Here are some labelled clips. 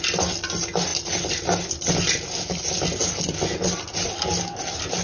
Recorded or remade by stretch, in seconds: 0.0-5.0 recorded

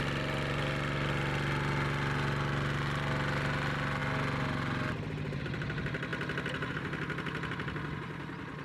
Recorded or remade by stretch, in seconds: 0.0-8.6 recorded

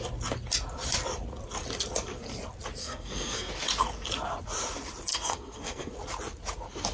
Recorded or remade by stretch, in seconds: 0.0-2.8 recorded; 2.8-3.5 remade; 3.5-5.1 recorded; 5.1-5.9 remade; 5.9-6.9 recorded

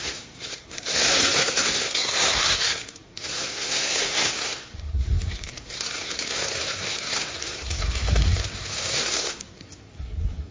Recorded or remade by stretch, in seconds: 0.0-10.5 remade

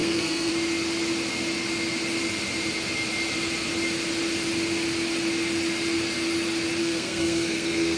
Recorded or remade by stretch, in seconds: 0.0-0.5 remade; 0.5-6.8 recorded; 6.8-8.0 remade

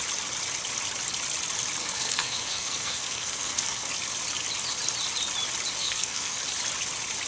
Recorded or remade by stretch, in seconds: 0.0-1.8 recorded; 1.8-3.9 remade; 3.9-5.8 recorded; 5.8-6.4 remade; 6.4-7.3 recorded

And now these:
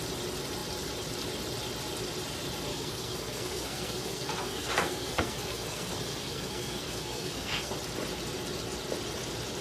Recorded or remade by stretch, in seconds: 0.0-2.7 recorded; 2.7-7.7 remade; 7.7-9.6 recorded

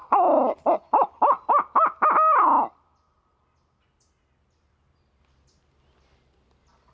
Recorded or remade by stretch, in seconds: 0.0-6.9 recorded